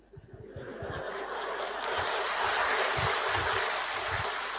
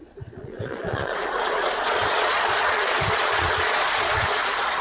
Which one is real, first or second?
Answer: first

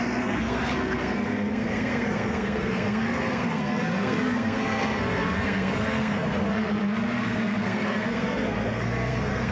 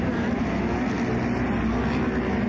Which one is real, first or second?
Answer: second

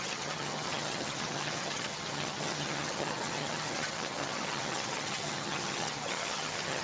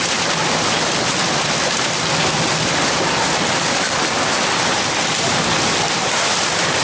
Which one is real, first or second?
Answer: second